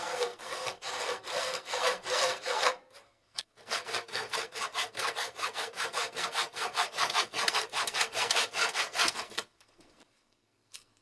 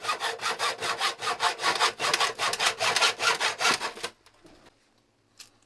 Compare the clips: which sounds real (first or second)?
second